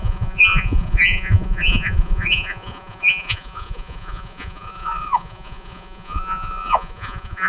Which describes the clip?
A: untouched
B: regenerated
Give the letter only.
B